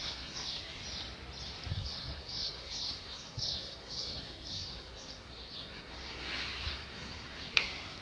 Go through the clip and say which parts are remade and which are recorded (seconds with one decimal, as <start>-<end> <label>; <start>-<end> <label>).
0.0-0.8 remade; 0.8-1.7 recorded; 1.7-8.0 remade

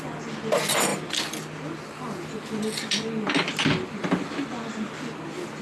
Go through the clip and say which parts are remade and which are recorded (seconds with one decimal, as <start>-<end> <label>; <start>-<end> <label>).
0.0-5.6 recorded